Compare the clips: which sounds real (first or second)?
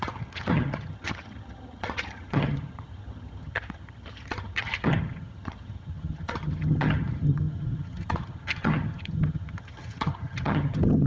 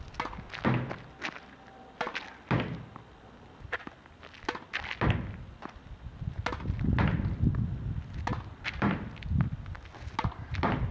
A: second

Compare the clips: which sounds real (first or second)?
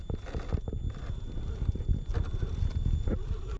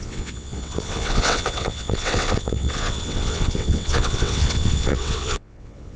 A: first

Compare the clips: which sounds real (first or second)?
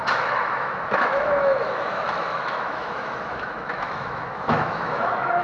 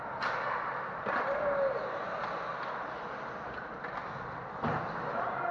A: second